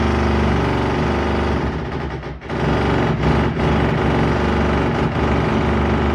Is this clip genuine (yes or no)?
yes